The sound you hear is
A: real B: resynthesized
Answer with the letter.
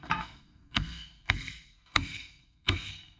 B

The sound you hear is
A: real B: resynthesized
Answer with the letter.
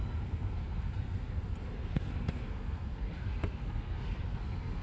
B